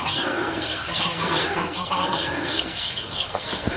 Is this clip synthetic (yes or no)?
yes